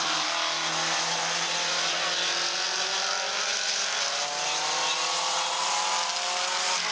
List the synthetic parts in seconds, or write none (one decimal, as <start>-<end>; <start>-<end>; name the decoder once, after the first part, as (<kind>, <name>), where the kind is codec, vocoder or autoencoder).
none